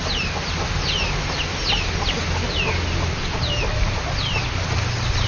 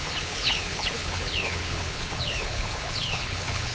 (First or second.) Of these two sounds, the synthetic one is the second